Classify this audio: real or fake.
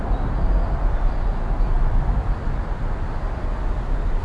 real